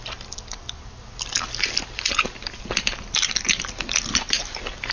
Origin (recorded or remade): recorded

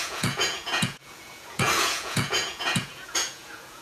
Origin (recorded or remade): remade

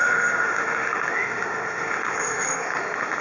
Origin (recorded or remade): remade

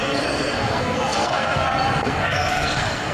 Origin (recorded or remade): remade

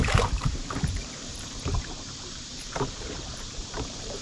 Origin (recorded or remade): remade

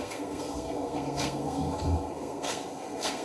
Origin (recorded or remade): remade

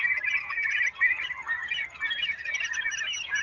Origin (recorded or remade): recorded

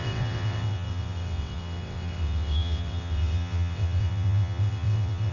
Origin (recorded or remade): remade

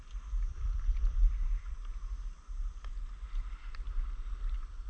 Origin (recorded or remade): recorded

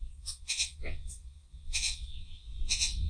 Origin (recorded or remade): remade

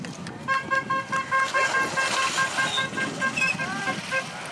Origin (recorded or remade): recorded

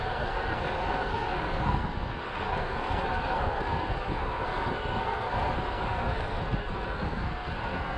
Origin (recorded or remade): remade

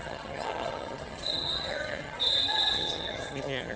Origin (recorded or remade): remade